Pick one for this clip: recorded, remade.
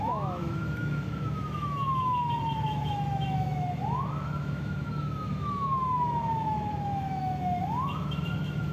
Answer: remade